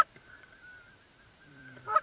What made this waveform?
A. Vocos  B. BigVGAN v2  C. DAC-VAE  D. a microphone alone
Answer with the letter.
B